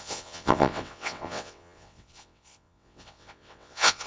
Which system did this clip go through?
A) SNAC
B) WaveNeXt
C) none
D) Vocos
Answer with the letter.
B